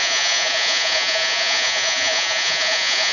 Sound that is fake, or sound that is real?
fake